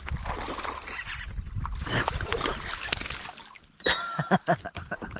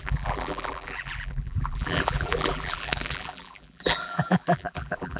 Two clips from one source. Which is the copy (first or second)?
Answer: second